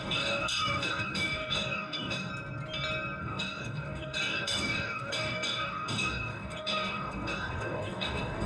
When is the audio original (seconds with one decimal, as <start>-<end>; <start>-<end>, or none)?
2.3-3.2